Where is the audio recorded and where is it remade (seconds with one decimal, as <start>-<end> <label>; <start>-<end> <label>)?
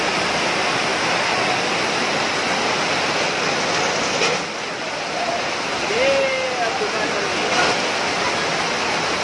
0.0-9.2 recorded